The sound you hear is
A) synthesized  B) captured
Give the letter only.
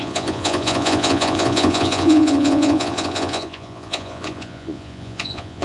A